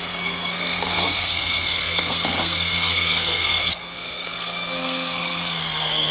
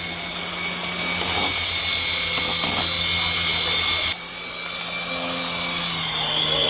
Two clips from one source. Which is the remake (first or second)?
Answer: first